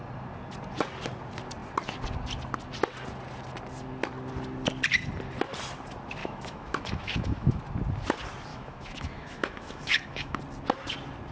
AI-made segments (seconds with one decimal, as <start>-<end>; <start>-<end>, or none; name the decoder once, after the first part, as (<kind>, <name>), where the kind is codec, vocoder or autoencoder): 6.2-7.6 (autoencoder, DAC-VAE); 8.5-10.4